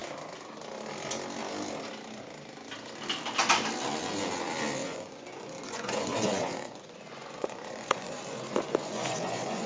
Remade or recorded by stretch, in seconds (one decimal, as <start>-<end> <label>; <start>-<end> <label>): 0.0-4.8 recorded; 4.8-9.7 remade